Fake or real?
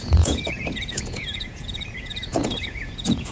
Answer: fake